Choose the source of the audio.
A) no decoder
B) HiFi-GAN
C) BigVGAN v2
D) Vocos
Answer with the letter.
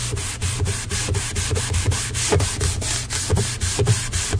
A